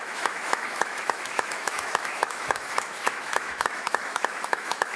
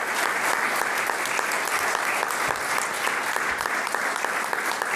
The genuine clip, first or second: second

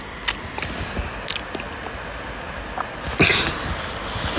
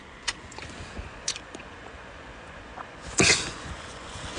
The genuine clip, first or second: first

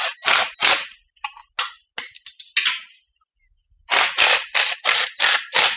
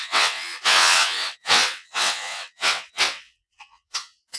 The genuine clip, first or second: first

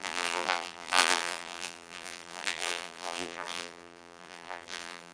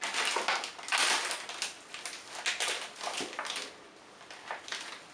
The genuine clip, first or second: second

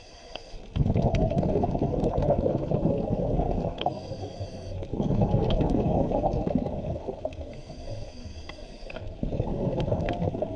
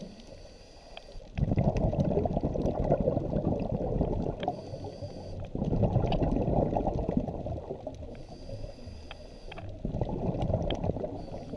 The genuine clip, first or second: second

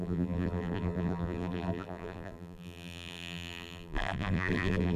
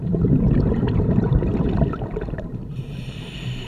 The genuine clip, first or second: second